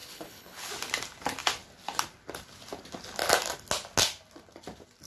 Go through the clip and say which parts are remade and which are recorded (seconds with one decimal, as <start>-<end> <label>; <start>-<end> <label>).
0.0-0.7 remade; 0.7-5.1 recorded